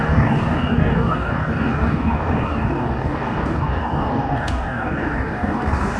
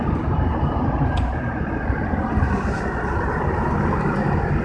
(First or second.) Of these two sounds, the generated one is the first